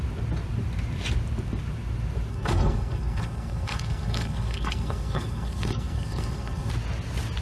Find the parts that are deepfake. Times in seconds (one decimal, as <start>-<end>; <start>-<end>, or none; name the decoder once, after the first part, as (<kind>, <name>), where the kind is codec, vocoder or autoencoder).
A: 2.3-6.7 (codec, SNAC)